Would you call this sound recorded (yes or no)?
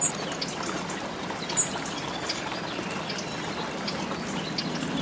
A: yes